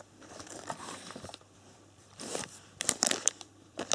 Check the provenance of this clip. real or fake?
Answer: fake